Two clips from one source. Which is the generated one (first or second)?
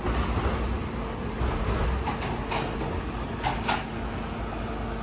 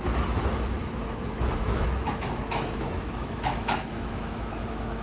second